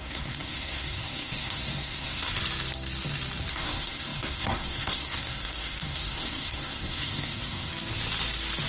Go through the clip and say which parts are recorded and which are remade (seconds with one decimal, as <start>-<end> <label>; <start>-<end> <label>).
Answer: 0.0-2.3 remade; 2.3-3.5 recorded; 3.5-7.7 remade; 7.7-8.7 recorded